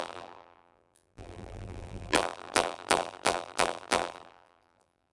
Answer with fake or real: fake